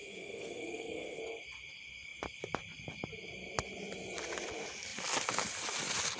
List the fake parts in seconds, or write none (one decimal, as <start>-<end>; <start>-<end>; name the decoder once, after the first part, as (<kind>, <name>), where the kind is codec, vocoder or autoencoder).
0.0-1.2 (codec, SNAC)